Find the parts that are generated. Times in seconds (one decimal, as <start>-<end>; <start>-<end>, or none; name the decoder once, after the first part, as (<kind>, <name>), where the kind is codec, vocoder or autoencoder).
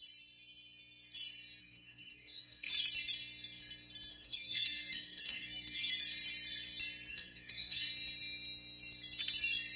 1.6-2.7 (codec, SNAC); 4.1-5.9; 7.1-7.9